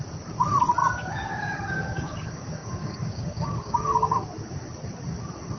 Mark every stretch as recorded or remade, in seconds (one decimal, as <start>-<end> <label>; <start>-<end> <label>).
0.0-0.8 recorded; 0.8-4.2 remade; 4.2-5.6 recorded